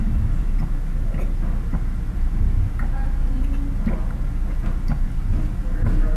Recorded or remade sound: recorded